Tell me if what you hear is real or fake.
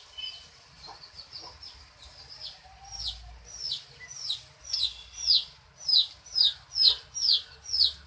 real